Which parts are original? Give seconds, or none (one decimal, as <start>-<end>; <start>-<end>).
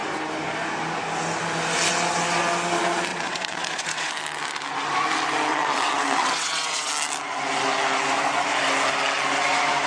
0.0-3.1; 4.1-5.5; 6.9-9.9